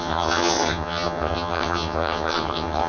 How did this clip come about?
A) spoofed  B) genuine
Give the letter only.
A